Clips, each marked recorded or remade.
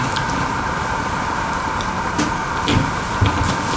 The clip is recorded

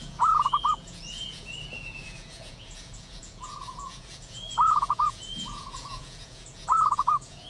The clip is remade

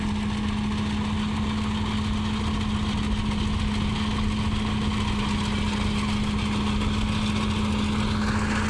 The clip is recorded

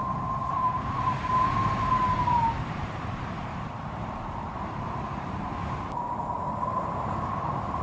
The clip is remade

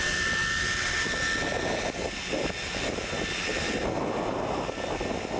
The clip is recorded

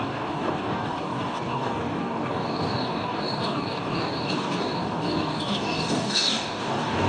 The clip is remade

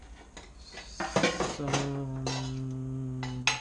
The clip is recorded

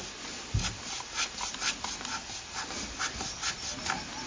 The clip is recorded